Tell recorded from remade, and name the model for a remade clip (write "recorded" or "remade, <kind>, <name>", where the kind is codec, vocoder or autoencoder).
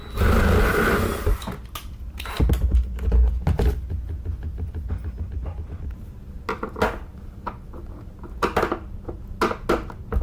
recorded